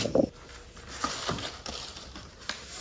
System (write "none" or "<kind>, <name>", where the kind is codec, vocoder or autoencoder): vocoder, BigVGAN v2